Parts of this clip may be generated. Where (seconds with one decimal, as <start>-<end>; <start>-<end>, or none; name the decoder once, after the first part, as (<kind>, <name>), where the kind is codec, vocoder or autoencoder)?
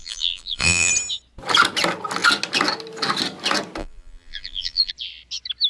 0.0-0.9 (vocoder, BigVGAN v2); 3.8-4.9